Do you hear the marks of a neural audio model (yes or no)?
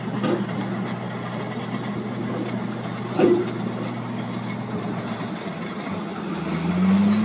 no